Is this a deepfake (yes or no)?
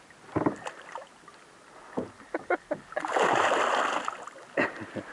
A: no